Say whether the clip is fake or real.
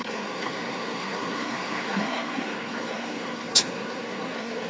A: fake